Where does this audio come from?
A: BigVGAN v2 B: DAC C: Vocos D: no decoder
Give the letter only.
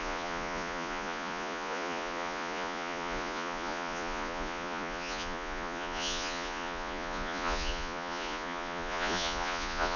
C